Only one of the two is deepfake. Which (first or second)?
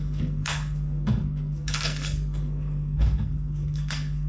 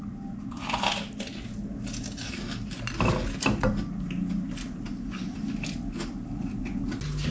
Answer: first